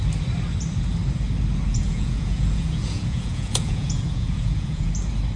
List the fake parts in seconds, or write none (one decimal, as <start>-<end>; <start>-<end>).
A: 1.7-4.9